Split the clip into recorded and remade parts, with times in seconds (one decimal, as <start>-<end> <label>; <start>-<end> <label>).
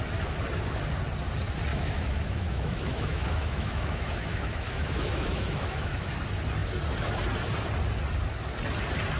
0.0-1.7 recorded; 1.7-6.1 remade; 6.1-9.2 recorded